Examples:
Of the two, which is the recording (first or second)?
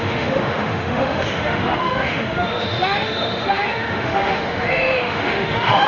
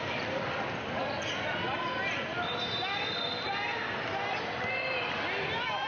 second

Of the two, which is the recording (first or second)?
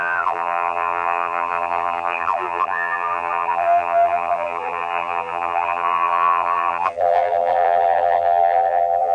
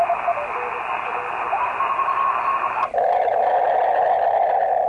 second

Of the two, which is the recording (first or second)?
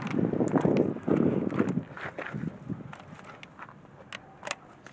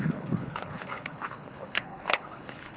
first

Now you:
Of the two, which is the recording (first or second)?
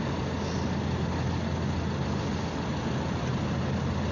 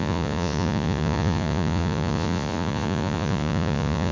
first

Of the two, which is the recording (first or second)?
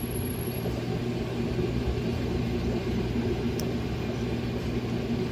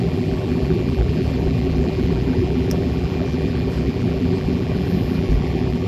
first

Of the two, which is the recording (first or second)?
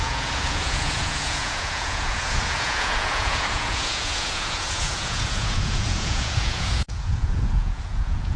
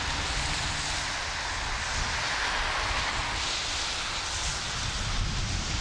second